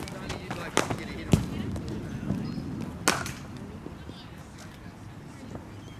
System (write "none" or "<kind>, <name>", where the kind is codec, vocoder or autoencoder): none